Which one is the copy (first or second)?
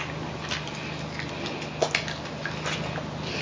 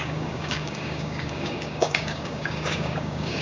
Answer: second